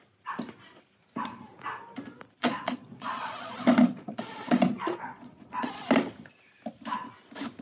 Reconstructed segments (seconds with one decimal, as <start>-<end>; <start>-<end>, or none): 2.4-5.9